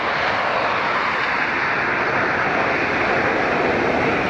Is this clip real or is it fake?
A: real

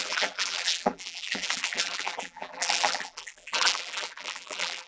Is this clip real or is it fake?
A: fake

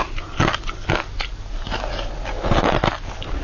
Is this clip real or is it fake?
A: real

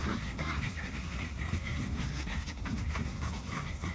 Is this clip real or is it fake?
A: fake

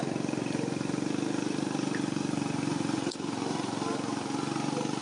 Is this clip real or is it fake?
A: real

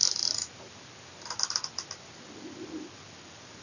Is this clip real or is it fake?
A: real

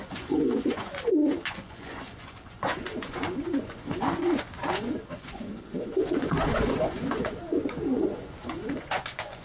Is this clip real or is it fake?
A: fake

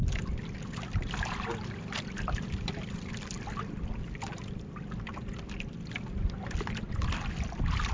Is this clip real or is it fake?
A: real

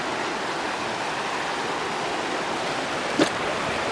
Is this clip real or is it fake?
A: real